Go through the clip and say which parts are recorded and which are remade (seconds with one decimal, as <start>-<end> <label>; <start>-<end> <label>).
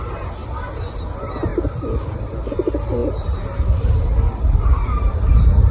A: 0.0-5.7 recorded